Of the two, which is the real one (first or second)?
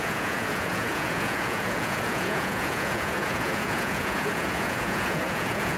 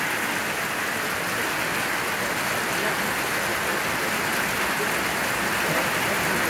second